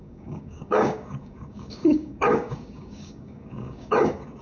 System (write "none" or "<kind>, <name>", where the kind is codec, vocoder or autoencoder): codec, DAC